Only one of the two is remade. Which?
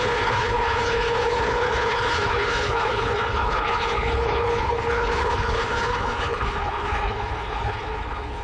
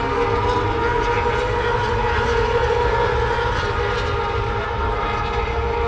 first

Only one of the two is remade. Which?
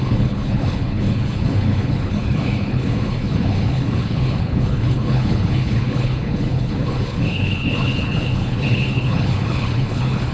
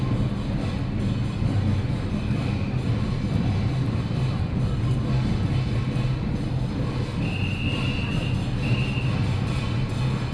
first